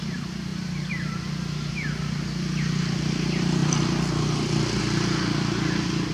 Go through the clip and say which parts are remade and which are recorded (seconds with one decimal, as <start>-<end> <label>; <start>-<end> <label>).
0.0-6.1 recorded